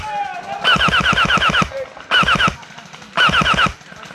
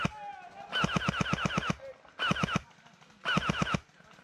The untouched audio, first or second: second